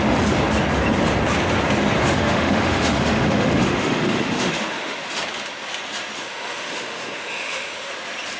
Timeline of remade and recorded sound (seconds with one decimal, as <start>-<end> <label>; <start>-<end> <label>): 0.0-2.1 recorded; 2.1-5.0 remade; 5.0-6.2 recorded; 6.2-7.9 remade; 7.9-8.4 recorded